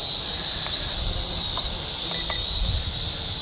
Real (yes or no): no